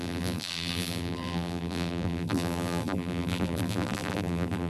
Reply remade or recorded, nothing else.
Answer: remade